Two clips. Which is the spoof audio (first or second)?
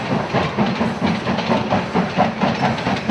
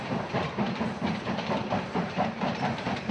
second